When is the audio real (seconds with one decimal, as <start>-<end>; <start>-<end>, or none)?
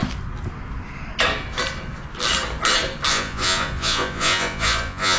0.0-3.1